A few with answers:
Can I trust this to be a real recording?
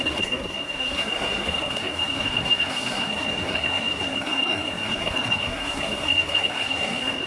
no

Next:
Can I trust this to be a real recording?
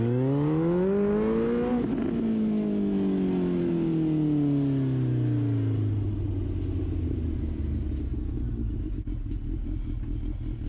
yes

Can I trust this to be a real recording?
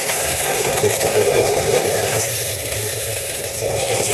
no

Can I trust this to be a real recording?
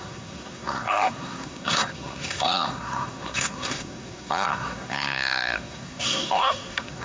no